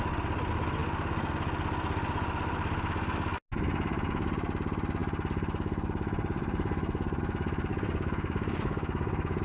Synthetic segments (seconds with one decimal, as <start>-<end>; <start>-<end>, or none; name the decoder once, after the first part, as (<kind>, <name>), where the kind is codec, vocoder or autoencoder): 7.7-9.4 (codec, DAC)